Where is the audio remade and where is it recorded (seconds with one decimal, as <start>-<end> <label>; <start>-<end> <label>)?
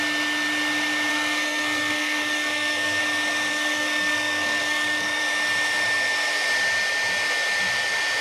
0.0-1.1 recorded; 1.1-3.0 remade; 3.0-3.5 recorded; 3.5-5.2 remade; 5.2-8.2 recorded